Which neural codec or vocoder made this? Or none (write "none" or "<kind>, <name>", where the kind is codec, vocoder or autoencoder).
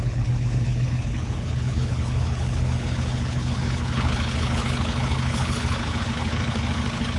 codec, HILCodec